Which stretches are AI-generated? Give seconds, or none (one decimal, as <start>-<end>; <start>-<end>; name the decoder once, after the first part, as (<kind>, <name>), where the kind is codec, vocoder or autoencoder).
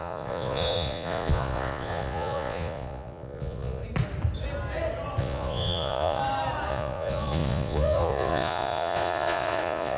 0.0-3.8 (vocoder, Vocos); 5.2-6.2; 6.7-10.0